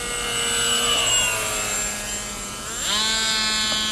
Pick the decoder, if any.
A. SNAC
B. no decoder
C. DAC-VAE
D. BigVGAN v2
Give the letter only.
B